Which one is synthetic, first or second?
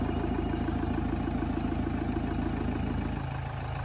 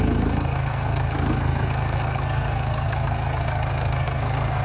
second